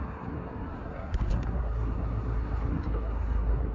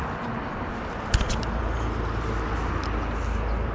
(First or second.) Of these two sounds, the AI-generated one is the first